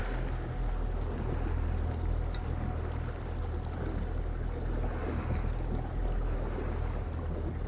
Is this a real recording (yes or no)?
yes